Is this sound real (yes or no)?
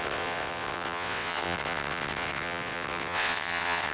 no